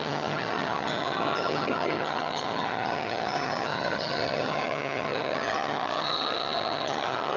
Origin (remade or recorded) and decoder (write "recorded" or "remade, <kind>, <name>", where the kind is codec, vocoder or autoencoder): remade, vocoder, HiFi-GAN